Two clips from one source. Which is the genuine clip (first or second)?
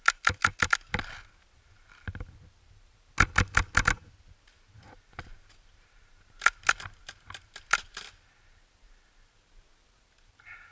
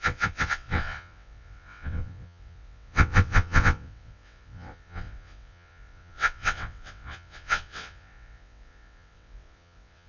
first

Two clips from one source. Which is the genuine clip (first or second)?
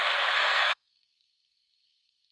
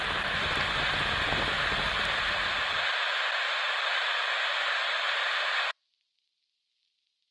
second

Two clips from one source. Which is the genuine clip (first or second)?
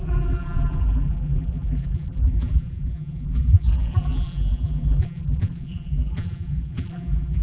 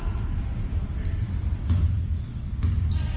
second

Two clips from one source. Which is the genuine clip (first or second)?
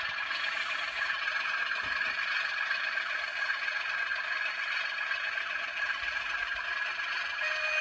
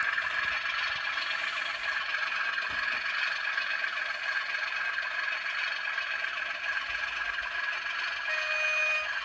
second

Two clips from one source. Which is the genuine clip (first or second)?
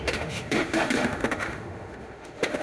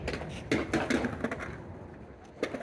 second